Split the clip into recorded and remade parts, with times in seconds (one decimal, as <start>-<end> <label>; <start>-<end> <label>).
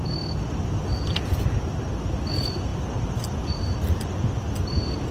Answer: 0.0-5.1 recorded